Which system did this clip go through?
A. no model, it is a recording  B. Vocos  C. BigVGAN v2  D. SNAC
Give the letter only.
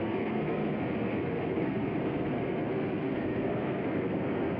D